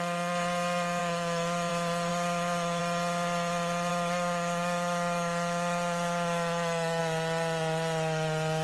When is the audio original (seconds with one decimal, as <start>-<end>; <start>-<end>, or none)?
0.0-1.0; 1.7-2.1; 2.8-3.9; 7.0-8.6